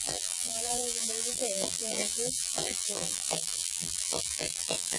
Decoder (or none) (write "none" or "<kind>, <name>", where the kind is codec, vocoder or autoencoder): vocoder, BigVGAN v2